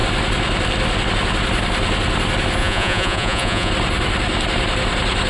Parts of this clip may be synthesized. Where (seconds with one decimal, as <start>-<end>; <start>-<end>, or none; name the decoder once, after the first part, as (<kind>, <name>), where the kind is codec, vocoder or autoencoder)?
2.6-3.7 (vocoder, Vocos)